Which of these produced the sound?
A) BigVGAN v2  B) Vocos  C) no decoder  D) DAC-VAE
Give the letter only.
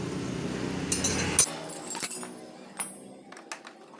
C